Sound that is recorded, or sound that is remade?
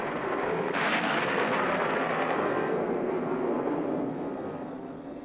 remade